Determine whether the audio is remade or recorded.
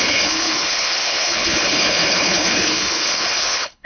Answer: remade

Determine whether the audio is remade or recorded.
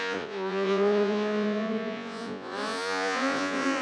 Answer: remade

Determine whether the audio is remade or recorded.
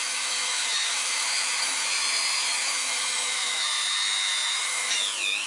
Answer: remade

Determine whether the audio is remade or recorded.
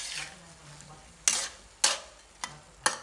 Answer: recorded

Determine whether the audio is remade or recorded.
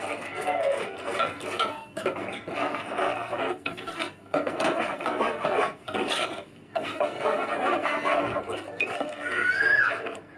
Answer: remade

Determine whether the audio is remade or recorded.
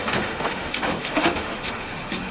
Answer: remade